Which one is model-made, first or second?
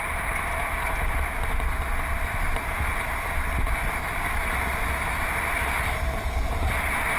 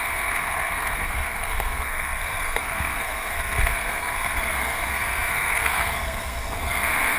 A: second